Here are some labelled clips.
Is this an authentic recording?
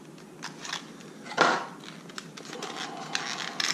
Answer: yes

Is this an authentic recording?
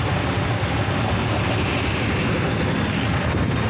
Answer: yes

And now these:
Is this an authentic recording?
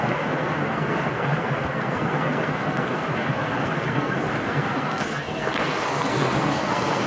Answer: no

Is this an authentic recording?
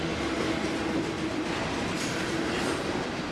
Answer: yes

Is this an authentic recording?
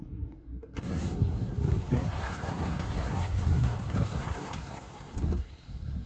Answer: no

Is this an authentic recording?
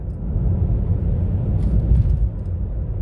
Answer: yes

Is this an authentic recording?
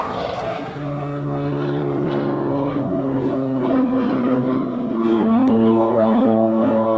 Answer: no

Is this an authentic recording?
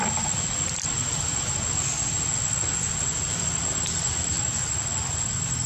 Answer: yes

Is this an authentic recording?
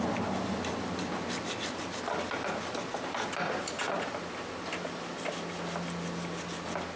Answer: yes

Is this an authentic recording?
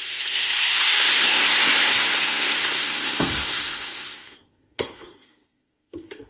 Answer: no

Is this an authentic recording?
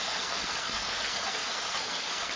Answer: no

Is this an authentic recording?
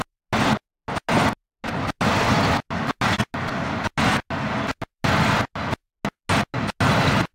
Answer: yes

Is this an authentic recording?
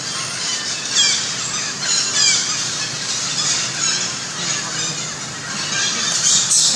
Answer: yes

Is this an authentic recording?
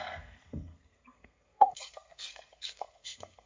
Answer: no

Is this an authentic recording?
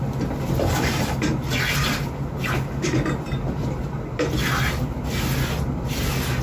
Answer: yes